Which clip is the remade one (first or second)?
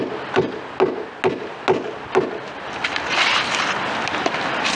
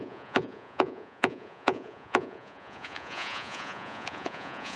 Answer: second